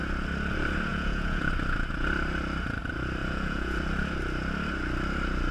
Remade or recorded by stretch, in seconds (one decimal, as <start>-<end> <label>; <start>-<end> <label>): 0.0-0.9 recorded; 0.9-1.5 remade; 1.5-3.2 recorded; 3.2-3.8 remade; 3.8-5.5 recorded